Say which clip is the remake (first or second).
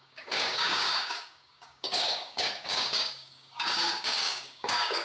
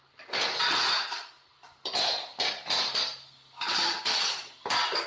first